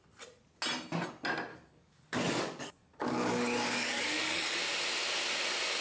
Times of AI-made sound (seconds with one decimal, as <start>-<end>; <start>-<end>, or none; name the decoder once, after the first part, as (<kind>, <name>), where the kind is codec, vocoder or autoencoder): 1.5-4.6 (codec, DAC)